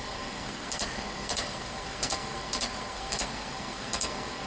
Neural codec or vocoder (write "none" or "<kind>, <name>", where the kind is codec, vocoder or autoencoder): codec, SNAC